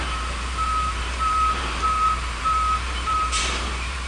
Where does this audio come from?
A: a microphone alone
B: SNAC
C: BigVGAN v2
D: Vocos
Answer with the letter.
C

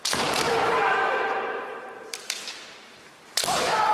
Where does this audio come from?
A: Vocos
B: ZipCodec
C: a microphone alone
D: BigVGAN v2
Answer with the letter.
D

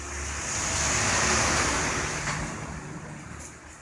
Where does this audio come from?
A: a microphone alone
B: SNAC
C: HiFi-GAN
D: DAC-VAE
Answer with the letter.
A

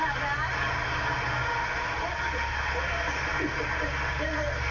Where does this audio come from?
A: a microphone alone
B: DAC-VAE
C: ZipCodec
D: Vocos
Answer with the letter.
A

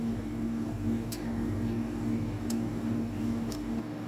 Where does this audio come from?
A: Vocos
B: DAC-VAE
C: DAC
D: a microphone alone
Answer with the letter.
C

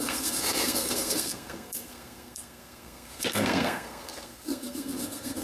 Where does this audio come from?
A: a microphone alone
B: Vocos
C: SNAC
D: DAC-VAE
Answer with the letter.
C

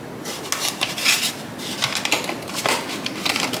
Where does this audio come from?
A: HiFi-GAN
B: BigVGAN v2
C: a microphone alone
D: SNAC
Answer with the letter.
C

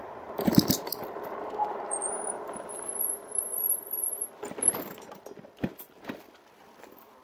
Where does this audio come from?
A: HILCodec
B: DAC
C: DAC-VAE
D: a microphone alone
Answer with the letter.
D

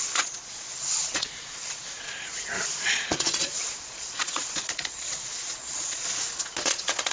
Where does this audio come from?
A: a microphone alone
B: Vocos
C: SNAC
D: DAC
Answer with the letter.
B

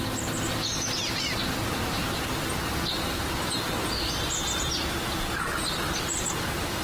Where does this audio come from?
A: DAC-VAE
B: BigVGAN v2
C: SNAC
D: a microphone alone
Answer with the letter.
D